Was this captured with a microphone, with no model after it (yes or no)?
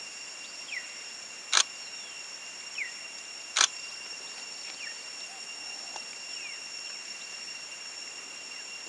yes